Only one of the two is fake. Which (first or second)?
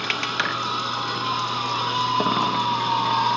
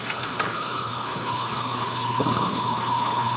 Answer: second